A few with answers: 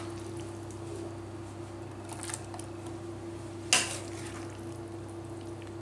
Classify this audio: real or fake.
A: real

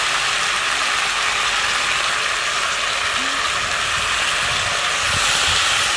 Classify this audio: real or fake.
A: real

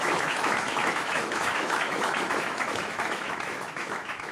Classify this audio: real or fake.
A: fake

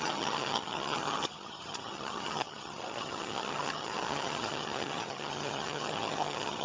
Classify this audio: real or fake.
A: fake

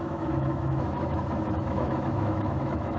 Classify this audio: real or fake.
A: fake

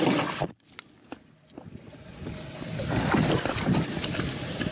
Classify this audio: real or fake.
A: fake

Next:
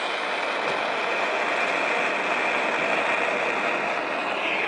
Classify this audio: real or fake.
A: real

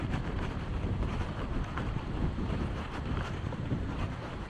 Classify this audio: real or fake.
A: fake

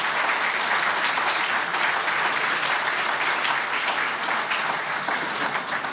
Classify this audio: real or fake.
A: real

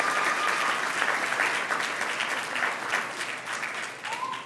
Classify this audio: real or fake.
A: real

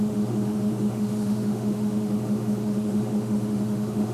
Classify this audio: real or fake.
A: fake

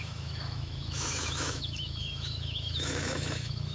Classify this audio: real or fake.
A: fake